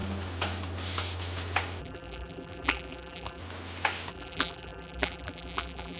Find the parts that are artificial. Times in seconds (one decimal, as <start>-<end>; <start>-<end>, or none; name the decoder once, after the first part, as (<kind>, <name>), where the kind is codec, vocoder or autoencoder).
1.8-3.4 (vocoder, BigVGAN v2); 4.1-6.0